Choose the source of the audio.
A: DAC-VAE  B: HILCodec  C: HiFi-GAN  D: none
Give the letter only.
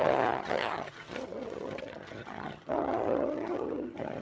C